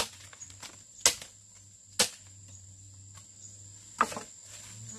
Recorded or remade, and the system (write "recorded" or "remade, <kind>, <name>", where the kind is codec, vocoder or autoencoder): recorded